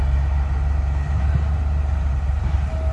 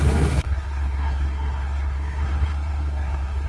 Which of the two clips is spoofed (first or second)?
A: second